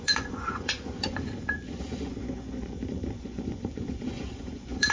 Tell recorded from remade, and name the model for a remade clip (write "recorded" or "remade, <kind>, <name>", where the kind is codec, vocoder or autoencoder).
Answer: remade, vocoder, Vocos